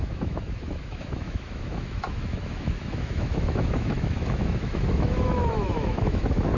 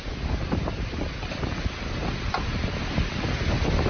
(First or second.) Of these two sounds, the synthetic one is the first